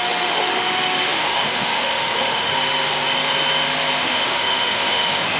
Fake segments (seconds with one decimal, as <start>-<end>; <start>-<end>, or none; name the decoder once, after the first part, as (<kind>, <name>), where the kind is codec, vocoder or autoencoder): 0.0-2.5 (autoencoder, DAC-VAE); 4.0-5.4